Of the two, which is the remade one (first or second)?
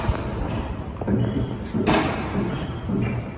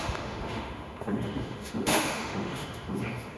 second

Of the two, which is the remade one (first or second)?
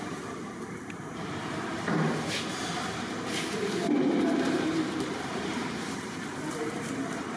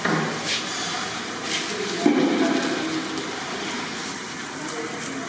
first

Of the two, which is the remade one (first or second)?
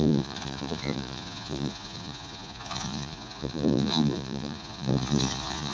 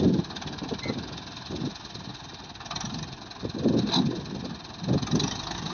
first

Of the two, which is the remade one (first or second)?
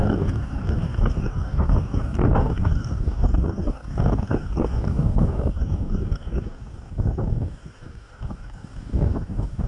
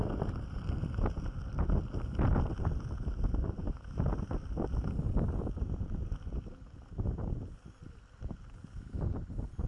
first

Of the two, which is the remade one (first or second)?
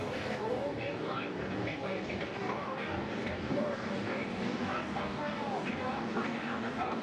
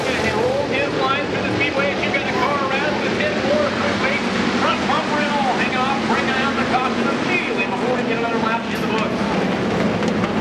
first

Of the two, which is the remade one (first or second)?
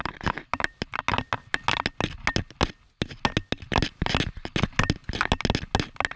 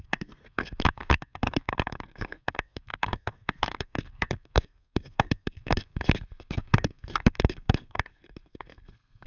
second